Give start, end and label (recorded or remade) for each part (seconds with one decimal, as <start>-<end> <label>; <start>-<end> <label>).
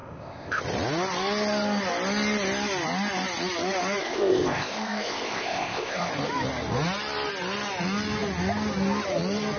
0.0-0.6 remade; 0.6-4.0 recorded; 4.0-6.1 remade; 6.1-9.6 recorded